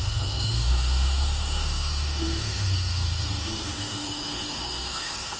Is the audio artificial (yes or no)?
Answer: yes